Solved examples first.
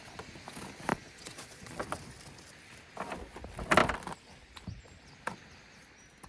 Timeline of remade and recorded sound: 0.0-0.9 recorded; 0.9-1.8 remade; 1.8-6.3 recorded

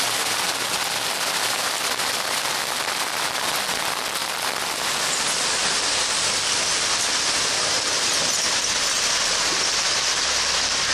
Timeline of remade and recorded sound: 0.0-10.9 recorded

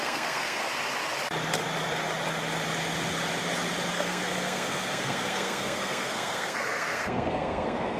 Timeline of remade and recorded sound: 0.0-0.6 remade; 0.6-3.9 recorded; 3.9-8.0 remade

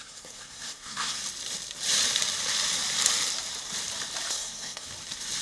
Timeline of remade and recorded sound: 0.0-1.2 remade; 1.2-4.3 recorded; 4.3-4.9 remade; 4.9-5.4 recorded

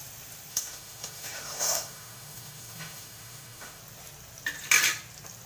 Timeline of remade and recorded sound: 0.0-0.5 recorded; 0.5-3.8 remade; 3.8-5.5 recorded

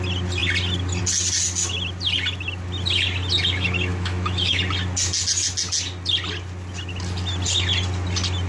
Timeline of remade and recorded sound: 0.0-3.9 recorded; 3.9-4.6 remade; 4.6-8.5 recorded

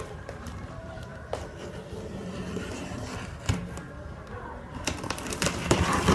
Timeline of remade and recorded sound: 0.0-1.1 remade; 1.1-4.8 recorded; 4.8-6.1 remade